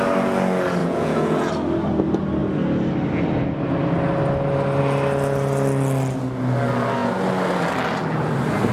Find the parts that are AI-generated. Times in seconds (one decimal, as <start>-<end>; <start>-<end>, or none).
0.8-1.5